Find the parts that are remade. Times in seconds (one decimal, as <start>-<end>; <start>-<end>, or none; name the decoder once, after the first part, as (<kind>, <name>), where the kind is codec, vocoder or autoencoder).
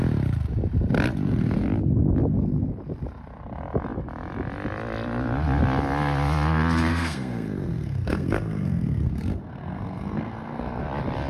6.9-10.8 (codec, SNAC)